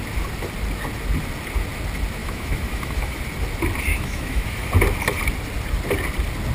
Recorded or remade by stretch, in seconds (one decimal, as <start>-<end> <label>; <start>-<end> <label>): 0.0-2.2 recorded; 2.2-3.2 remade; 3.2-3.9 recorded; 3.9-4.7 remade; 4.7-6.5 recorded